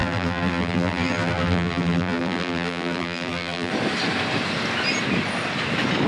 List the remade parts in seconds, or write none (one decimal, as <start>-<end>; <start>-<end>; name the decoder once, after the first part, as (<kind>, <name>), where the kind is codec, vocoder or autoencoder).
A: 0.0-3.7 (vocoder, BigVGAN v2)